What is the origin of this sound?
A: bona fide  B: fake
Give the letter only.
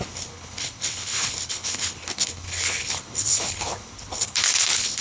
B